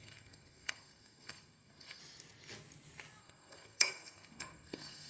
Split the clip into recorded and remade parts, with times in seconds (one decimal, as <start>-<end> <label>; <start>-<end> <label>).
0.0-2.0 remade; 2.0-3.2 recorded; 3.2-5.1 remade